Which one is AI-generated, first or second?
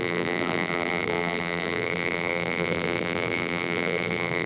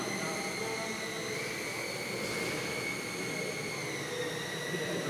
first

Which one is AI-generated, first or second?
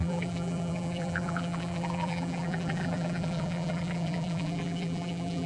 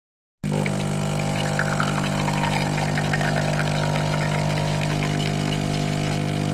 first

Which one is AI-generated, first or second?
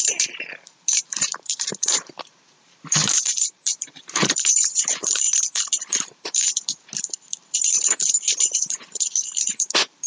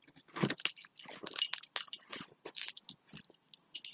first